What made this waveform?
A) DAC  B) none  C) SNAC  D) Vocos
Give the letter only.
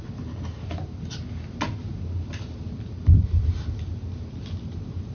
B